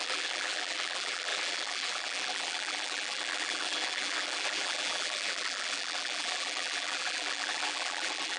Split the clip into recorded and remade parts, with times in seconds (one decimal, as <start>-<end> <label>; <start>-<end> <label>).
0.0-8.4 remade